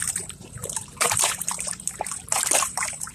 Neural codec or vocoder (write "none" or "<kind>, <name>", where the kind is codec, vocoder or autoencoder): vocoder, BigVGAN v2